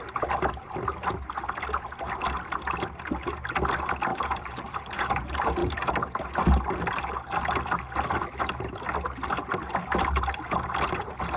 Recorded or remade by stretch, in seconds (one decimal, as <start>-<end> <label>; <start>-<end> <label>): 0.0-4.1 recorded; 4.1-5.1 remade; 5.1-11.4 recorded